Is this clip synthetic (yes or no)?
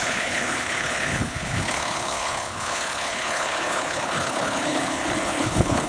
yes